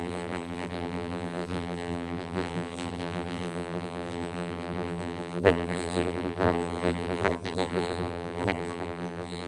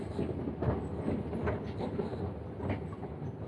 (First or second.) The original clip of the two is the second